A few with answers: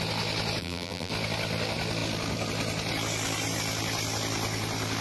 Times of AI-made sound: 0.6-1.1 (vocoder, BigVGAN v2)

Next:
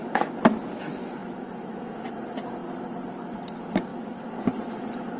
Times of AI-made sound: 0.0-5.2 (vocoder, BigVGAN v2)

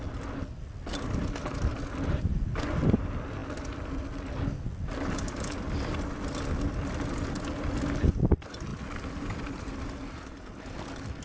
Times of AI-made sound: none

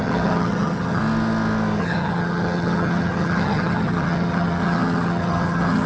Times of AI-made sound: 0.0-1.0 (vocoder, HiFi-GAN); 1.8-5.9

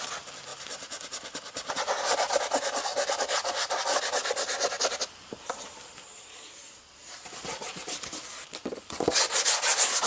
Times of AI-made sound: none

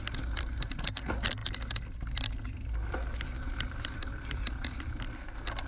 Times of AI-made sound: 1.4-4.8 (vocoder, BigVGAN v2)

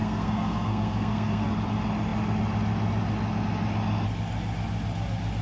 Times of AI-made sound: 0.0-1.5 (codec, SNAC)